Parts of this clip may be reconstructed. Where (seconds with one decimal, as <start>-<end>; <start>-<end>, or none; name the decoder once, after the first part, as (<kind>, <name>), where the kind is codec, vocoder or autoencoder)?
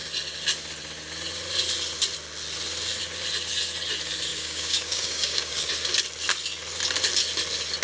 4.3-5.7 (codec, DAC)